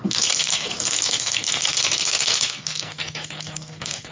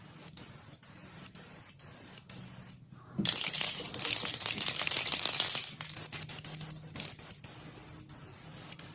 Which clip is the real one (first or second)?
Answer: second